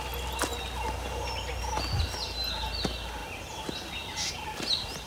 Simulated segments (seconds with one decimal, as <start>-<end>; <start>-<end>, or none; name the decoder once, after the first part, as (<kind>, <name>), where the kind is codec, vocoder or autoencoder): none